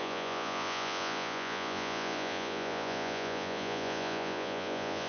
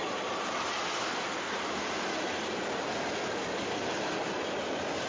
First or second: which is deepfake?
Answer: first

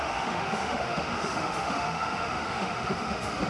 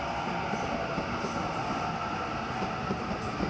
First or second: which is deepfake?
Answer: first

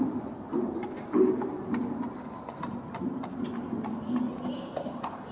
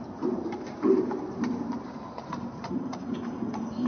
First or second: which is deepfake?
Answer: second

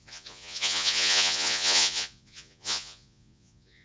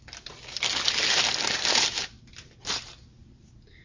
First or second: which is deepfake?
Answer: first